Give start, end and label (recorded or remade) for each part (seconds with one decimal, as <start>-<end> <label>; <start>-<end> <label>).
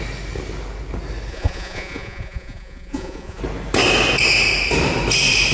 0.0-1.3 recorded; 1.3-3.4 remade; 3.4-5.5 recorded